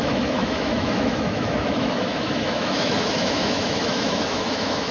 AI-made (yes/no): yes